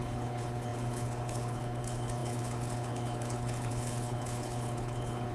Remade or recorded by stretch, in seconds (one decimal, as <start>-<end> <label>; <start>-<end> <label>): 0.0-5.3 remade